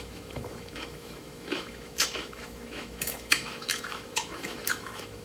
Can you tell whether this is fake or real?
fake